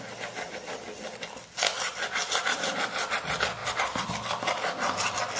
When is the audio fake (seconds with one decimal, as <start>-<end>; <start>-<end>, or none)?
3.6-4.1